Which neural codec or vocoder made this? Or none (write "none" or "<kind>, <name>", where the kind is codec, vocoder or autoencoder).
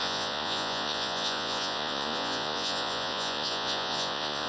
vocoder, Vocos